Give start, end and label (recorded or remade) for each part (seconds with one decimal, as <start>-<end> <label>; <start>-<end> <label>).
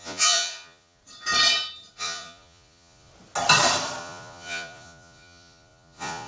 0.0-1.0 remade; 1.0-1.9 recorded; 1.9-3.1 remade; 3.1-4.0 recorded; 4.0-6.3 remade